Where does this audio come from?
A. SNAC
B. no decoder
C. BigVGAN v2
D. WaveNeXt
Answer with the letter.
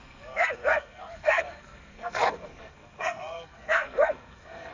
A